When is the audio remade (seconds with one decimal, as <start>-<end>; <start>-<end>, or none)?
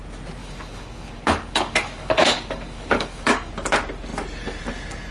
0.4-3.5